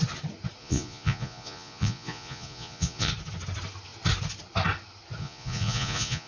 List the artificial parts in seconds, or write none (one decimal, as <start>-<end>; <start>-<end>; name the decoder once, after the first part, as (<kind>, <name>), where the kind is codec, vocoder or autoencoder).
0.6-3.1 (vocoder, Vocos); 5.2-6.3